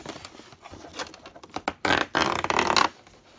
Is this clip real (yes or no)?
yes